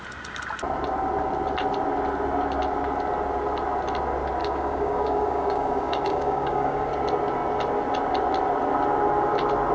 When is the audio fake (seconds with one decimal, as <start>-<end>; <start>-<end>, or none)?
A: 4.4-6.9